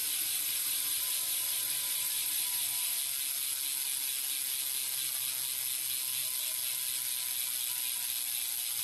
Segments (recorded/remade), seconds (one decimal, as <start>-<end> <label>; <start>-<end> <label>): 0.0-3.0 remade; 3.0-8.8 recorded